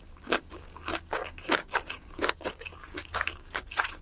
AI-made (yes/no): yes